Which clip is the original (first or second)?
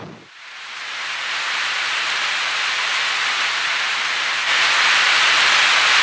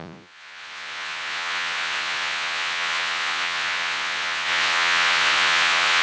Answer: first